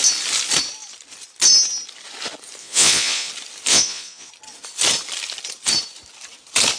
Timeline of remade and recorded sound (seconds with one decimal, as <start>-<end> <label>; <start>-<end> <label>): 0.0-2.6 recorded; 2.6-3.3 remade; 3.3-3.7 recorded; 3.7-4.3 remade; 4.3-6.8 recorded